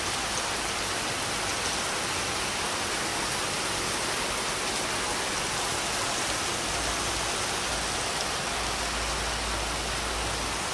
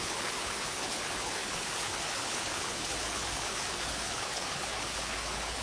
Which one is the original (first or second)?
first